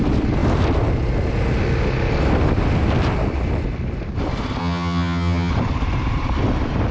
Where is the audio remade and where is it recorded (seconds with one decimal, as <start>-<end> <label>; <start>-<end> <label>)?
0.0-4.6 recorded; 4.6-5.5 remade; 5.5-6.9 recorded